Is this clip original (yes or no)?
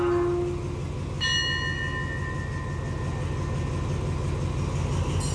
yes